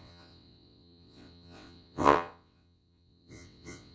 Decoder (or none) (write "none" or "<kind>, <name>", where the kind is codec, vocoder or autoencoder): vocoder, WaveNeXt